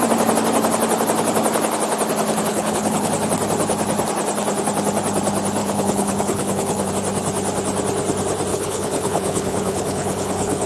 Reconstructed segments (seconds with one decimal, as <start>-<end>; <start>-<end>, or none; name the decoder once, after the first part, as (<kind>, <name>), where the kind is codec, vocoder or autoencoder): 2.5-3.1 (codec, HILCodec); 5.6-6.9; 8.5-10.7